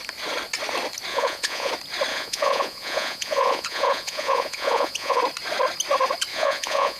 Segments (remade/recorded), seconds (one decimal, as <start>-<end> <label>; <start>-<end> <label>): 0.0-1.1 recorded; 1.1-1.7 remade; 1.7-2.1 recorded; 2.1-5.2 remade; 5.2-6.3 recorded; 6.3-7.0 remade